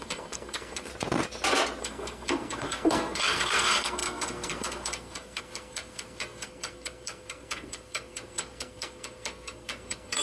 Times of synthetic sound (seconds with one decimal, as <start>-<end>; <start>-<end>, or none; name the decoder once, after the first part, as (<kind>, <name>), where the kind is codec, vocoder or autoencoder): 0.0-0.9 (codec, SNAC); 1.8-10.2